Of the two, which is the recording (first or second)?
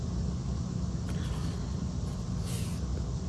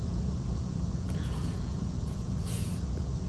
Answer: first